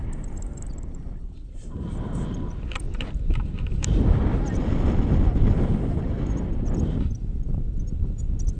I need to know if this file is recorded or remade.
remade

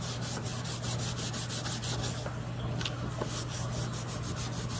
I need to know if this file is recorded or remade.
recorded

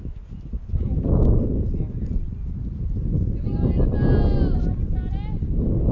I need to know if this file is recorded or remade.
recorded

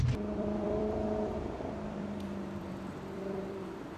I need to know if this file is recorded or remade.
remade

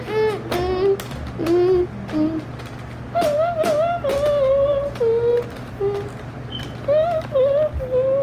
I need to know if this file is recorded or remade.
recorded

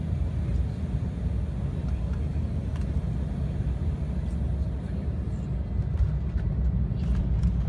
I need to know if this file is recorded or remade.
recorded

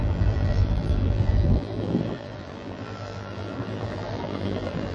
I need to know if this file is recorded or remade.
remade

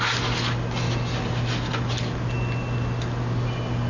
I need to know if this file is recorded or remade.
recorded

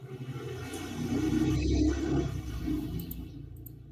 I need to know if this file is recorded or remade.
recorded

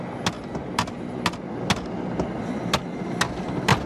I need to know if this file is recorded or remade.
recorded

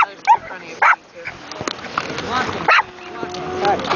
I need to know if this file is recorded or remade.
recorded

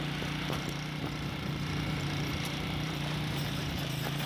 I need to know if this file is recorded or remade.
remade